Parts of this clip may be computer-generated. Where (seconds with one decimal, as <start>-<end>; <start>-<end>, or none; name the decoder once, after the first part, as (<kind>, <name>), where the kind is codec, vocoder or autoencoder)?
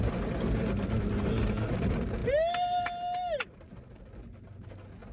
none